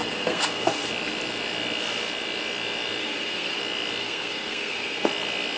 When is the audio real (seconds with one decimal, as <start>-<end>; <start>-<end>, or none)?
0.9-3.0; 3.6-4.0; 5.1-5.6